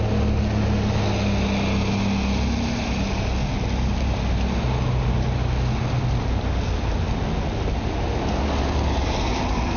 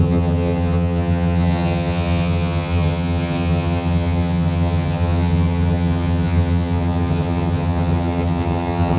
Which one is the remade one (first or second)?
second